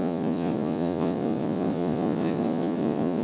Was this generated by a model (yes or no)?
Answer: yes